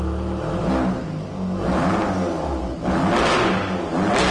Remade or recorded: recorded